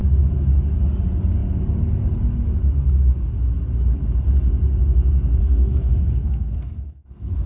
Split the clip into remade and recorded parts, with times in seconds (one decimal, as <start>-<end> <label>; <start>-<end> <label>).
0.0-5.4 recorded; 5.4-7.5 remade